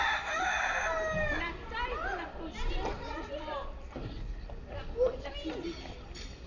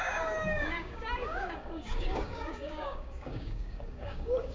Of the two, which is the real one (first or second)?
first